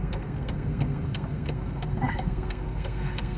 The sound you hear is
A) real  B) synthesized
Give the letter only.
B